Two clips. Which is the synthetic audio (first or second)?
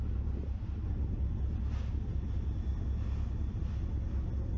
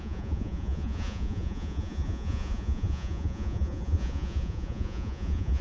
second